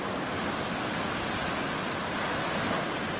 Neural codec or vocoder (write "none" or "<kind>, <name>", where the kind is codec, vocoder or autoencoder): none